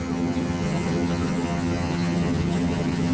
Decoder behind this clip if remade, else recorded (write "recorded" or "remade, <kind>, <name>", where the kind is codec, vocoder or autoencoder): remade, vocoder, HiFi-GAN